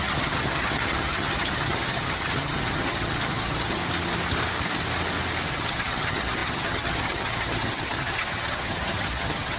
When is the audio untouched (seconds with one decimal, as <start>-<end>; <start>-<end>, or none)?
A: 3.8-5.5